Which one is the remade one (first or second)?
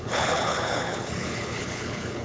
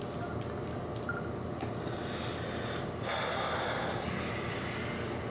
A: first